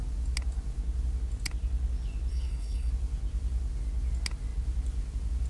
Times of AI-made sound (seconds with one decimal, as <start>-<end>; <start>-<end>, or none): 2.3-2.9